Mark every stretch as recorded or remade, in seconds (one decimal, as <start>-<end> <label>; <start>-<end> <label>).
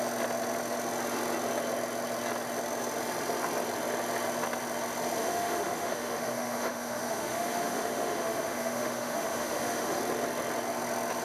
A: 0.0-5.2 recorded; 5.2-10.0 remade; 10.0-11.2 recorded